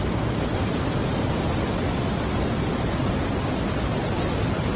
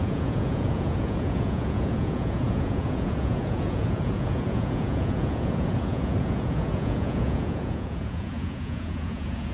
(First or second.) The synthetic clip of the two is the second